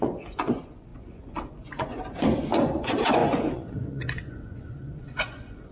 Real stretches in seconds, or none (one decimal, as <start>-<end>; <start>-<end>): none